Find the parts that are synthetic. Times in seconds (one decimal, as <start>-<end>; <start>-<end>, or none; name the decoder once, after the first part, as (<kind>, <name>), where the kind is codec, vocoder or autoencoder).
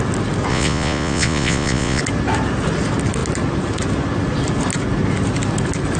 0.5-2.0 (vocoder, Vocos)